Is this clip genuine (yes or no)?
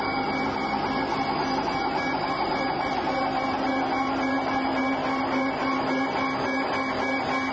yes